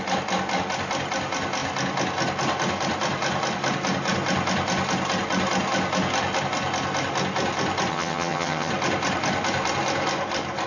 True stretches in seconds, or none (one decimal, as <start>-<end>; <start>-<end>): 0.0-7.9; 8.7-10.7